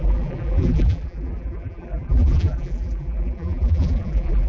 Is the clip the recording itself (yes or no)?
no